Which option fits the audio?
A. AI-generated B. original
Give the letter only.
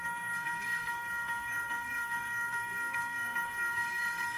A